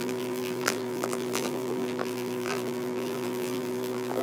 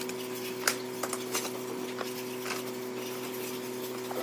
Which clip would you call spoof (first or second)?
first